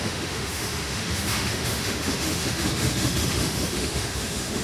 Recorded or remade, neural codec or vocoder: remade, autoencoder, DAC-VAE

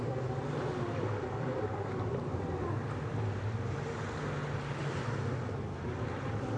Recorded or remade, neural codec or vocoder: recorded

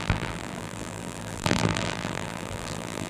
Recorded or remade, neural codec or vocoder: remade, vocoder, BigVGAN v2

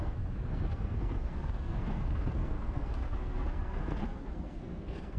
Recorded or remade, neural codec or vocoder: remade, codec, SNAC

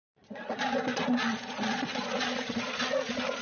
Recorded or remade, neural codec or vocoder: remade, vocoder, Vocos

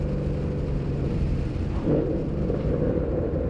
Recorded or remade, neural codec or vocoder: remade, vocoder, BigVGAN v2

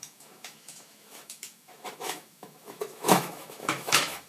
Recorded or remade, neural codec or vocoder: remade, autoencoder, DAC-VAE